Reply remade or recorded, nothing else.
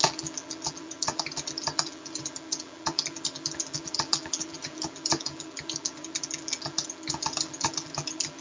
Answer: remade